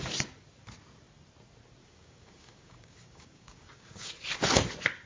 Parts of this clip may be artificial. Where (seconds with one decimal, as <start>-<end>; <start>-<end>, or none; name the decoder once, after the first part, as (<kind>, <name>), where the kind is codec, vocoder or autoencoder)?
1.8-4.1 (codec, DAC)